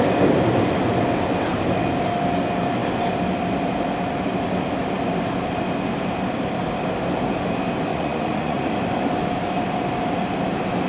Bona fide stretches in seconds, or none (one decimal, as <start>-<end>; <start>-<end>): 0.0-7.9; 8.7-10.9